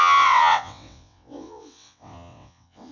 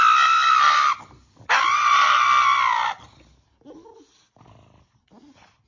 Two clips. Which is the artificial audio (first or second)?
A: first